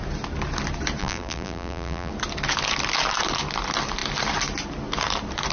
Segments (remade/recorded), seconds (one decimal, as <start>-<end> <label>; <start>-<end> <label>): 0.0-1.0 recorded; 1.0-2.1 remade; 2.1-5.5 recorded